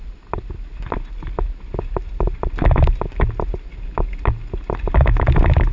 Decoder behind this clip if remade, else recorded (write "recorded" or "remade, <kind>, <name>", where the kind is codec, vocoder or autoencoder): recorded